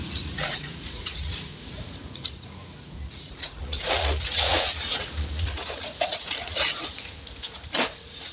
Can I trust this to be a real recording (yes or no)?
no